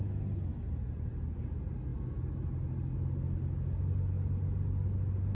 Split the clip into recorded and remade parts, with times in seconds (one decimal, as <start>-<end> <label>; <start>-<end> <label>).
0.0-5.3 recorded